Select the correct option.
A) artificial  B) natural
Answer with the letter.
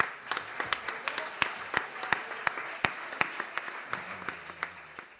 B